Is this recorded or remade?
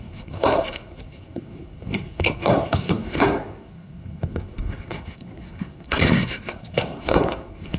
remade